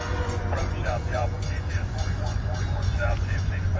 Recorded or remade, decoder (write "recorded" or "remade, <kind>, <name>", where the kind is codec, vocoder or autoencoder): remade, vocoder, Vocos